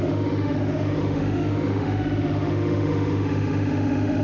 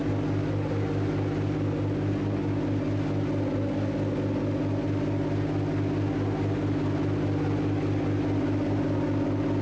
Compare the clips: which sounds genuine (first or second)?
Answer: second